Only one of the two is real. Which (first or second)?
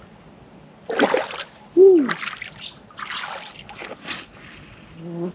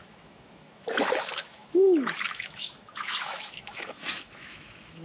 first